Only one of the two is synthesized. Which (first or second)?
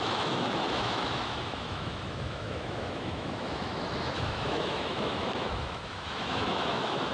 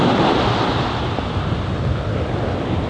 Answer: first